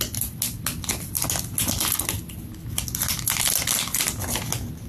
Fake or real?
real